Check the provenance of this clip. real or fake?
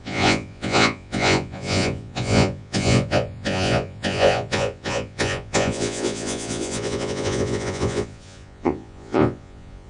fake